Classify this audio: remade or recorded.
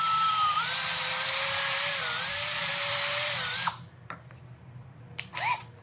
remade